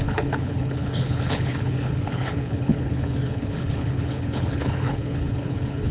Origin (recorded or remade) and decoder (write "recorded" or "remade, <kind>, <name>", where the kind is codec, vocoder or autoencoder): remade, codec, HILCodec